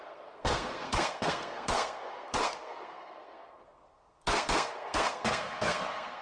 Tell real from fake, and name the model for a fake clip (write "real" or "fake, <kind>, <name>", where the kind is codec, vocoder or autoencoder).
fake, codec, SNAC